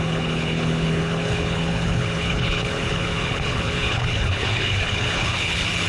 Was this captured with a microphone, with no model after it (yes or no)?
no